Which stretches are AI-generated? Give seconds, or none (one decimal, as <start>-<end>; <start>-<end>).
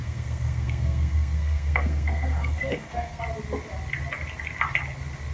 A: 0.0-3.2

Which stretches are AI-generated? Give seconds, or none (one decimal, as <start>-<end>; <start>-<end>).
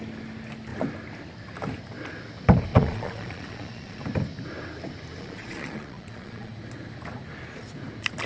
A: 2.7-4.0; 5.2-6.5